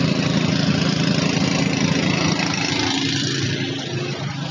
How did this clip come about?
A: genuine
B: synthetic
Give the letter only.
A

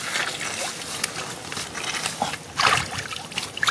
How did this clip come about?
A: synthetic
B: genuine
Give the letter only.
B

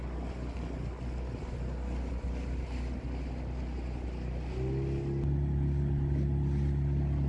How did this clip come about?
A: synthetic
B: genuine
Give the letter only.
B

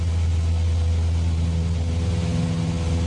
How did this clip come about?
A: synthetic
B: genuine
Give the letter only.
B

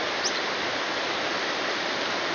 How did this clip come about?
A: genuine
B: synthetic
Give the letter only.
A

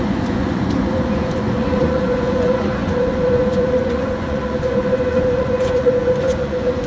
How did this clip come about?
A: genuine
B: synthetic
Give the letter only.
B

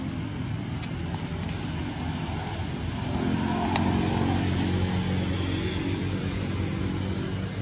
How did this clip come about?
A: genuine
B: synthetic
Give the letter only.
A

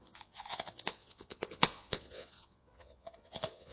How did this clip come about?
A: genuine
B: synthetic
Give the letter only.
B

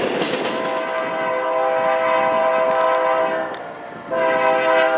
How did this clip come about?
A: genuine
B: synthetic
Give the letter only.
A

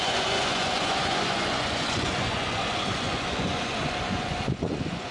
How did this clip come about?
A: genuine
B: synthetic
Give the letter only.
B